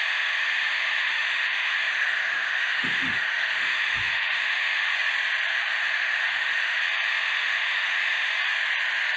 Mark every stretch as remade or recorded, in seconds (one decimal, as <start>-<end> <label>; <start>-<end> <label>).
0.0-0.4 recorded; 0.4-4.9 remade; 4.9-5.5 recorded; 5.5-6.8 remade; 6.8-7.4 recorded; 7.4-8.3 remade; 8.3-9.2 recorded